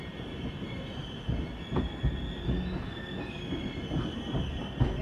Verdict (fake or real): real